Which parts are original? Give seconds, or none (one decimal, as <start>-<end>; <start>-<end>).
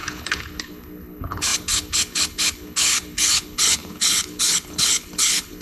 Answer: none